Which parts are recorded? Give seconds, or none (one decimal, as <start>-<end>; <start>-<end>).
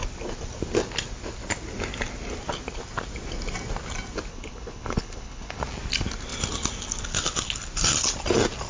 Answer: 0.0-4.3; 5.6-8.7